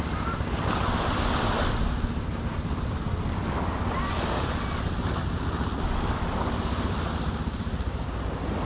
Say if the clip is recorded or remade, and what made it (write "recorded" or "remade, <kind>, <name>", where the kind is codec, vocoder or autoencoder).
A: recorded